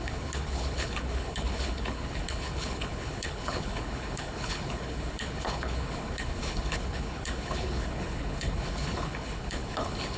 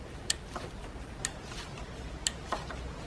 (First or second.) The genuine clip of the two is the second